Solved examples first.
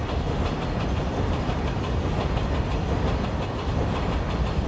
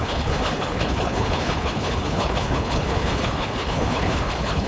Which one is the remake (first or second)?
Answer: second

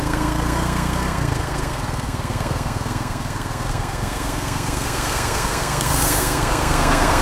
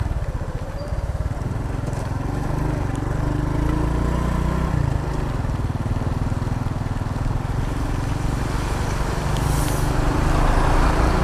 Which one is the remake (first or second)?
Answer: first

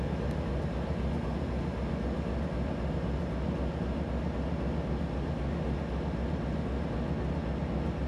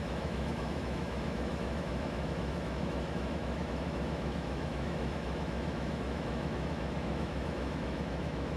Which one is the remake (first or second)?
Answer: second